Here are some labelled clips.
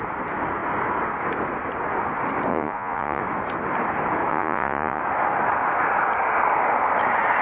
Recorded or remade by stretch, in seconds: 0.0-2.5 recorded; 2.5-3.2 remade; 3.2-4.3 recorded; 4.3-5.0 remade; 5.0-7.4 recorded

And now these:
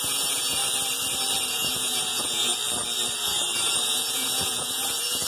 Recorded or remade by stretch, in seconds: 0.0-0.6 remade; 0.6-1.5 recorded; 1.5-2.5 remade; 2.5-3.7 recorded; 3.7-5.3 remade

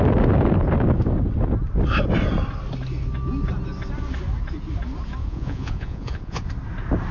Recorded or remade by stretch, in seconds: 0.0-5.2 recorded; 5.2-6.5 remade; 6.5-7.1 recorded

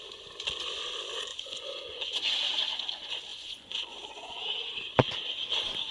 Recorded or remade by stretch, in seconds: 0.0-1.3 recorded; 1.3-2.3 remade; 2.3-3.3 recorded; 3.3-4.4 remade; 4.4-5.9 recorded